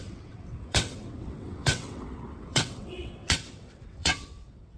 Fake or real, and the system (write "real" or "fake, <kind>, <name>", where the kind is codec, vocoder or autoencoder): fake, vocoder, WaveNeXt